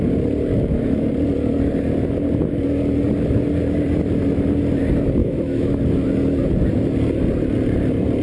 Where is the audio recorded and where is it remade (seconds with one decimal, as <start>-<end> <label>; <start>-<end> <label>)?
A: 0.0-0.5 recorded; 0.5-1.1 remade; 1.1-5.2 recorded; 5.2-5.8 remade; 5.8-8.2 recorded